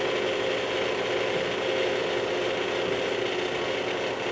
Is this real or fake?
real